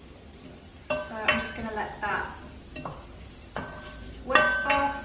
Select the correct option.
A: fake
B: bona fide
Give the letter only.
B